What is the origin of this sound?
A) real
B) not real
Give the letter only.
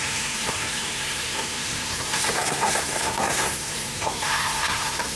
B